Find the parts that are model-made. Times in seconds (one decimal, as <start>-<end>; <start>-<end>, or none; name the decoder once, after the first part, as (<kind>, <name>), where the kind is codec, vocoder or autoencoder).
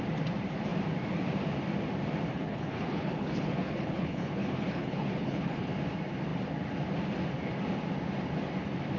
2.3-5.7 (codec, HILCodec)